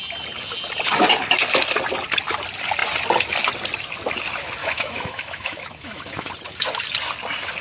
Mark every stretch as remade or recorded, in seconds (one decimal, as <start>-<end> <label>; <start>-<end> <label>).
0.0-4.6 recorded; 4.6-6.3 remade; 6.3-7.6 recorded

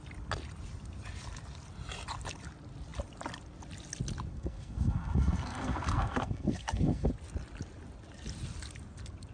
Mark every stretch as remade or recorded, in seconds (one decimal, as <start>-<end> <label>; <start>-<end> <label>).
0.0-4.3 recorded; 4.3-7.1 remade; 7.1-9.3 recorded

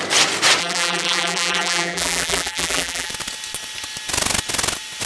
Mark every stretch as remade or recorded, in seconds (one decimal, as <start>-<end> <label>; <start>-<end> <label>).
0.0-0.6 recorded; 0.6-3.1 remade; 3.1-5.1 recorded

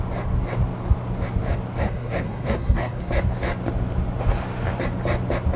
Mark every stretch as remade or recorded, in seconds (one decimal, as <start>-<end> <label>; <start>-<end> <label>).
0.0-1.8 recorded; 1.8-3.1 remade; 3.1-5.6 recorded

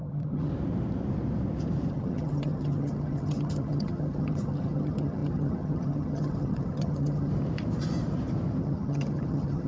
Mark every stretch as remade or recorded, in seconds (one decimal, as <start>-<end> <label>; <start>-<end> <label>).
0.0-0.5 remade; 0.5-1.9 recorded; 1.9-7.3 remade; 7.3-8.6 recorded; 8.6-9.7 remade

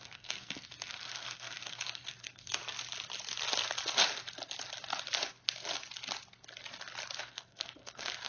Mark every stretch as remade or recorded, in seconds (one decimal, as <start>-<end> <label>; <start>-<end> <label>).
0.0-2.6 remade; 2.6-7.2 recorded; 7.2-8.3 remade

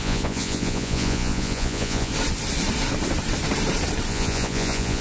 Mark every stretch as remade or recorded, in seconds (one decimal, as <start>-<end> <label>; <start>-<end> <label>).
0.0-2.1 remade; 2.1-4.1 recorded; 4.1-5.0 remade

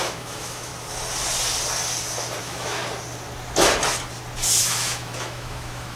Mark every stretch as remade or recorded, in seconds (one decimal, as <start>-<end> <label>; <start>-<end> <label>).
0.0-0.7 remade; 0.7-2.4 recorded; 2.4-2.8 remade; 2.8-4.6 recorded; 4.6-6.0 remade